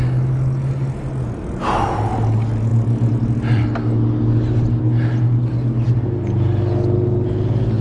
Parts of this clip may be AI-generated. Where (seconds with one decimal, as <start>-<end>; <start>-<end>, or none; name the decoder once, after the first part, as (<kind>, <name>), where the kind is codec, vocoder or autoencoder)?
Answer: none